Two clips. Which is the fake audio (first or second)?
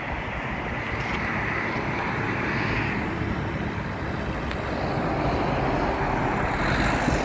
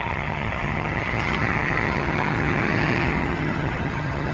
second